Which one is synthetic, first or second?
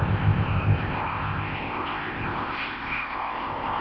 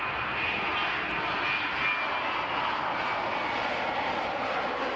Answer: first